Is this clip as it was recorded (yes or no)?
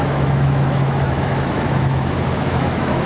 no